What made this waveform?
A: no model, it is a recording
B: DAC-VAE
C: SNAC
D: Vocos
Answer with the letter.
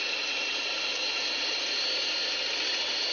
A